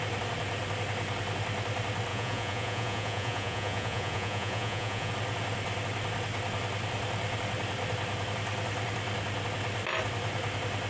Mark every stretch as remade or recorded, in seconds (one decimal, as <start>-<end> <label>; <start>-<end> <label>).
0.0-2.1 recorded; 2.1-5.1 remade; 5.1-10.9 recorded